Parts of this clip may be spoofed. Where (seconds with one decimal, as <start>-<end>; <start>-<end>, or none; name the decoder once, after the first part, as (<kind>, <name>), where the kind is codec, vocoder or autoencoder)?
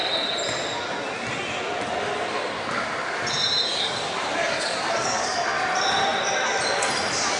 3.7-5.4 (codec, DAC)